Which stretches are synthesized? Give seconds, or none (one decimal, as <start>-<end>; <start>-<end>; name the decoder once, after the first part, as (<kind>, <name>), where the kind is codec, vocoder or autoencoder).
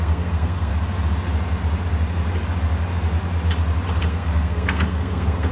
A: 0.0-0.7 (codec, SNAC); 4.0-5.5